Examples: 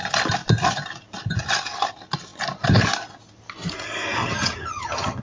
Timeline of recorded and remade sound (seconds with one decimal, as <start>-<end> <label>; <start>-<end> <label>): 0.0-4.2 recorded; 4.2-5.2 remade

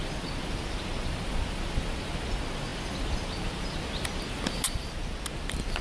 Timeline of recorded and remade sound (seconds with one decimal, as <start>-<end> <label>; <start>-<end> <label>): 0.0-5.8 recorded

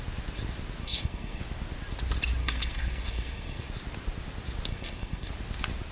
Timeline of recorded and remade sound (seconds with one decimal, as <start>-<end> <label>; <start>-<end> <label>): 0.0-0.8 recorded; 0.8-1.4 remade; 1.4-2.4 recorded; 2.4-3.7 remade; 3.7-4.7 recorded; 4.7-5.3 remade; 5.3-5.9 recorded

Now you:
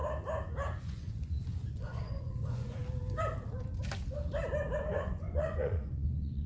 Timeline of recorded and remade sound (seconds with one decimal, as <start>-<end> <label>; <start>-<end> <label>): 0.0-0.8 recorded; 0.8-2.8 remade; 2.8-4.8 recorded; 4.8-6.5 remade